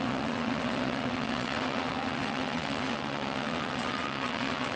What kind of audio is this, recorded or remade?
remade